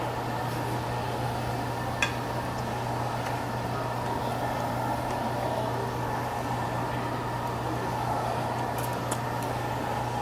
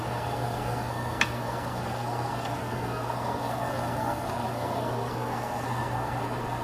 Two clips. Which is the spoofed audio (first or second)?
second